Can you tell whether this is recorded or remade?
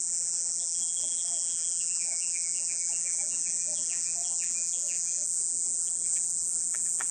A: remade